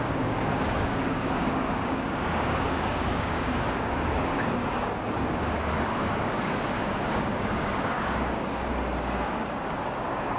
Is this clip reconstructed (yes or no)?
yes